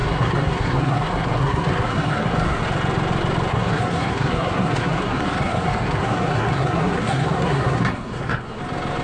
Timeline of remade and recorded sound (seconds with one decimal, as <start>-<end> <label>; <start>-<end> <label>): 0.0-2.6 remade; 2.6-3.5 recorded; 3.5-8.6 remade; 8.6-9.0 recorded